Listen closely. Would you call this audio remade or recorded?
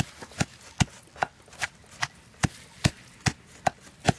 recorded